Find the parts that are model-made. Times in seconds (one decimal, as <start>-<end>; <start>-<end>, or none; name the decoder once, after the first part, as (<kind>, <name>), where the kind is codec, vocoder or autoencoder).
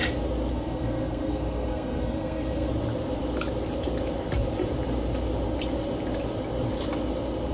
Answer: 0.5-2.7 (codec, SNAC)